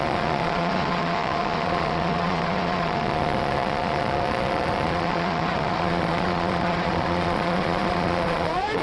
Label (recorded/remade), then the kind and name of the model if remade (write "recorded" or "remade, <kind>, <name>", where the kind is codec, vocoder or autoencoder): remade, vocoder, Vocos